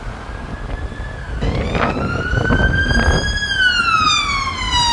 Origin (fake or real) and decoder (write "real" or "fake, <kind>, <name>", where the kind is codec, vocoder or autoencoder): real